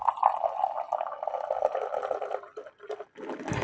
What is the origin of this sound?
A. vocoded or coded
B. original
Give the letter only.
B